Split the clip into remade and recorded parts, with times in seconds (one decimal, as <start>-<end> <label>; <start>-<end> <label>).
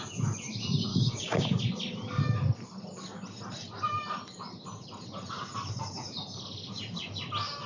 0.0-0.9 recorded; 0.9-1.6 remade; 1.6-7.7 recorded